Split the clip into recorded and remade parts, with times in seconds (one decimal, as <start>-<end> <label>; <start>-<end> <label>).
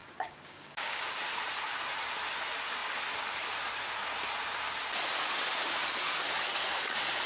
0.0-1.2 remade; 1.2-7.3 recorded